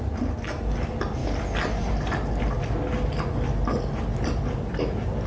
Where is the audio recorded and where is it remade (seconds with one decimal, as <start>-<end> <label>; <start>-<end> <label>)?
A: 0.0-5.3 recorded